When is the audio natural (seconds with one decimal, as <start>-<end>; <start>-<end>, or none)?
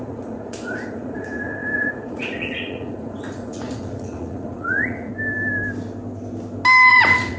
5.1-6.9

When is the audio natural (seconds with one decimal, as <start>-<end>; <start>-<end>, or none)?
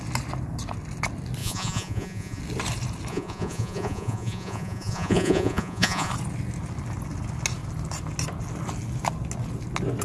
0.0-1.4; 2.4-3.1; 6.1-10.0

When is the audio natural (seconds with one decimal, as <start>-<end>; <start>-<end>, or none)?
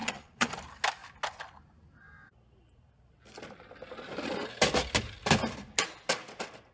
0.5-6.7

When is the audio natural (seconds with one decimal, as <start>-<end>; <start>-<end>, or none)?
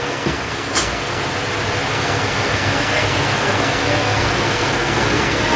1.2-1.9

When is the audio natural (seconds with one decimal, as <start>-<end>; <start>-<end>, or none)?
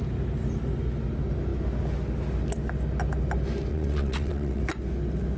0.0-3.7; 4.6-5.4